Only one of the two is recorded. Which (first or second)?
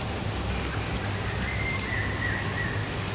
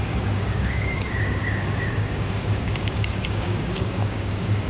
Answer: first